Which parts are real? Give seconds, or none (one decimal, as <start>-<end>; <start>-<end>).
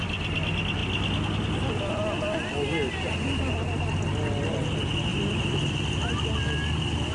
0.0-7.1